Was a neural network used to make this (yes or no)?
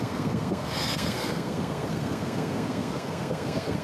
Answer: yes